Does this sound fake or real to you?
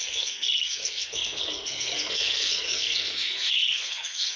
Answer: fake